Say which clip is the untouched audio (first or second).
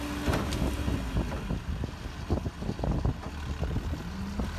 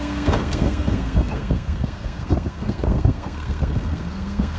first